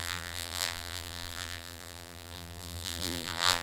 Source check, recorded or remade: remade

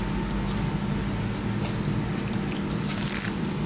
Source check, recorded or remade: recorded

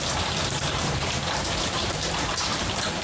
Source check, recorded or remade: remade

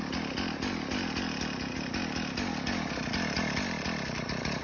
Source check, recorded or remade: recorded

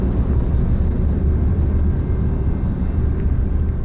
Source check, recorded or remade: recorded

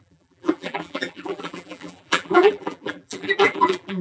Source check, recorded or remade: remade